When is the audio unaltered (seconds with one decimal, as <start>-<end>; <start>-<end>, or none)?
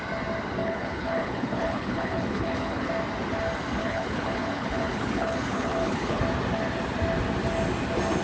0.0-0.6; 2.9-3.8; 6.2-8.2